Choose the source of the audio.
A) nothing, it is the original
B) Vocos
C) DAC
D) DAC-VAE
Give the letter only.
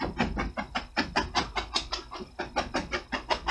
A